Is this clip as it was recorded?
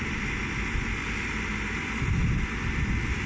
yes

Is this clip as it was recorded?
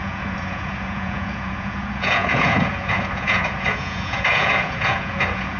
no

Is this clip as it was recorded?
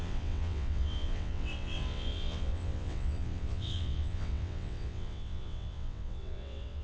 no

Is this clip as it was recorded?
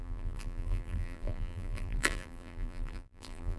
no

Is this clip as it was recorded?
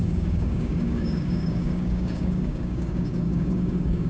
no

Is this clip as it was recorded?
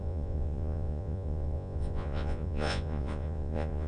no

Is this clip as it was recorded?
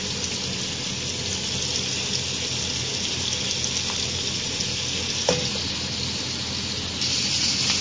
yes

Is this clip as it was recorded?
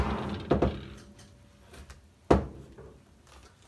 yes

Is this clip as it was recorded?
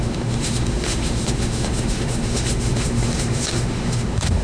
no